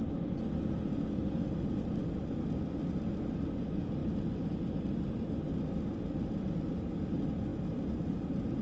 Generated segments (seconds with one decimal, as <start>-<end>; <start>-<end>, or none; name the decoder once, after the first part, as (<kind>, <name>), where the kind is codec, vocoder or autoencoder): 4.0-4.6 (vocoder, BigVGAN v2); 7.5-8.6